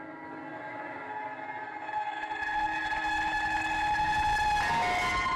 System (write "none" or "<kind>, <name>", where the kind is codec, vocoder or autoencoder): none